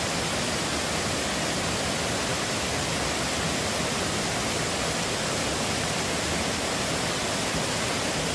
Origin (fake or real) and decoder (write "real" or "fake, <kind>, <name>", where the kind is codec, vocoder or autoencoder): real